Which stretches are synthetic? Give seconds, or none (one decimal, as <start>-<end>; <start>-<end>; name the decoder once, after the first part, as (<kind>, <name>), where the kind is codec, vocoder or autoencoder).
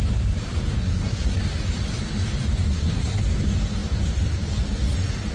0.8-1.4 (codec, SNAC); 2.7-3.2